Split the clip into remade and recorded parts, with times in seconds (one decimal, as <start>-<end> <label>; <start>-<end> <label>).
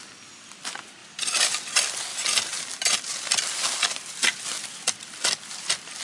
0.0-1.0 recorded; 1.0-1.5 remade; 1.5-2.1 recorded; 2.1-6.0 remade